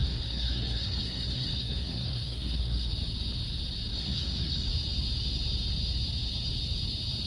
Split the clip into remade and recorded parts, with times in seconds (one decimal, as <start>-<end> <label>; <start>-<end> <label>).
0.0-2.9 remade; 2.9-3.9 recorded; 3.9-4.7 remade; 4.7-7.3 recorded

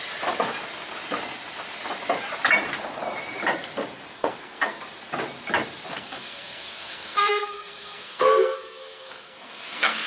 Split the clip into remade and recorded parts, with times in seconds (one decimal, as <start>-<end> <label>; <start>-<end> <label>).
0.0-4.2 recorded; 4.2-4.8 remade; 4.8-5.9 recorded; 5.9-10.1 remade

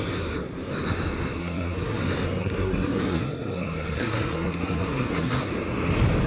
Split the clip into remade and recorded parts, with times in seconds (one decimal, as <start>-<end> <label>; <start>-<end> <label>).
0.0-1.4 recorded; 1.4-2.0 remade; 2.0-2.4 recorded; 2.4-5.5 remade; 5.5-6.3 recorded

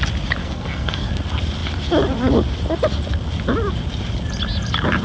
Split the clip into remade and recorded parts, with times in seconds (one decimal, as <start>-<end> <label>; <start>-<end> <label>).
0.0-0.4 recorded; 0.4-1.1 remade; 1.1-5.0 recorded

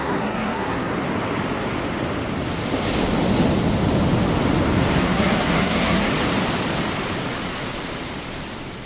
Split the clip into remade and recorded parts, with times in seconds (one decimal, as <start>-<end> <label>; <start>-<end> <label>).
0.0-0.9 remade; 0.9-5.0 recorded; 5.0-6.1 remade; 6.1-8.9 recorded